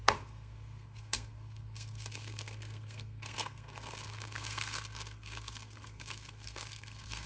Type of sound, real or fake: fake